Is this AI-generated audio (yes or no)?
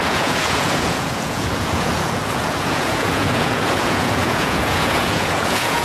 yes